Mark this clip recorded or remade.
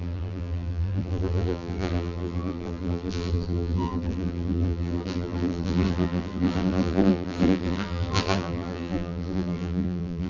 remade